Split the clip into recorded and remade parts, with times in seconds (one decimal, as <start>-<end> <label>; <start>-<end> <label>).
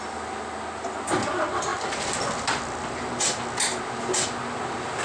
0.0-5.0 recorded